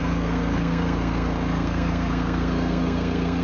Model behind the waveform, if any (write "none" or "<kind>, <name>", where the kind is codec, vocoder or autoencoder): codec, SNAC